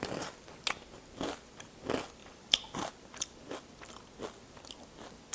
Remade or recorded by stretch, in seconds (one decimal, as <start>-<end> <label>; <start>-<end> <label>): 0.0-2.2 recorded; 2.2-2.9 remade; 2.9-5.3 recorded